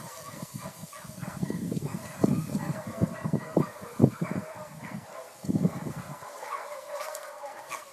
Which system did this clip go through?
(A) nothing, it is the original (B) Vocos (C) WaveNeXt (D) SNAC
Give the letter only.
D